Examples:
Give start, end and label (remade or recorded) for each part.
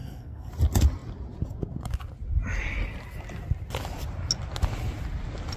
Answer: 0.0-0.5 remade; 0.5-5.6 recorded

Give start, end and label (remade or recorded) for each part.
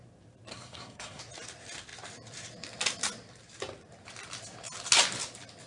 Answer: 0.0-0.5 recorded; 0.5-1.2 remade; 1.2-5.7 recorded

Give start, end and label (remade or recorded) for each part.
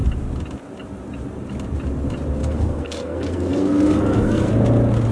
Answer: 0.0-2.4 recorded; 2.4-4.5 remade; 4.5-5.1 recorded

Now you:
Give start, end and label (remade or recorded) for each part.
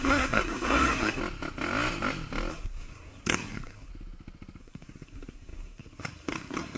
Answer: 0.0-1.2 remade; 1.2-2.5 recorded; 2.5-3.9 remade; 3.9-4.6 recorded; 4.6-6.8 remade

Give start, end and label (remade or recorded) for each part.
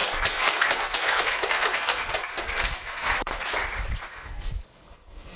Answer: 0.0-3.3 remade; 3.3-4.1 recorded; 4.1-5.4 remade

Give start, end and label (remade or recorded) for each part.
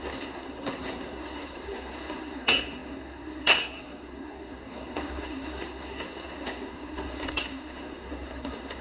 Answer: 0.0-8.8 remade